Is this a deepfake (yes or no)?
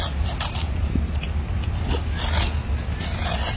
no